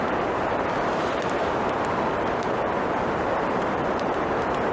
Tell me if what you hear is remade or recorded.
remade